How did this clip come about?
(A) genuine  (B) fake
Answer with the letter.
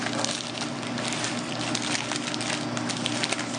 A